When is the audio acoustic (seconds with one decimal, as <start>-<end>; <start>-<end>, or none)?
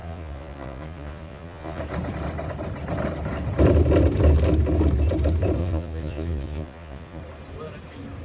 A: 1.8-5.6; 7.2-8.2